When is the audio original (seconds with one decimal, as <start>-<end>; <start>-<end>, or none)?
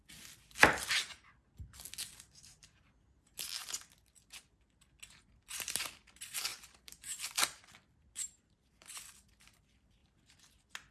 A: 0.0-6.5; 9.0-10.9